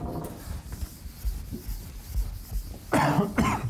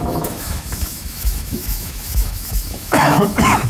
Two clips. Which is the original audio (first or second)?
first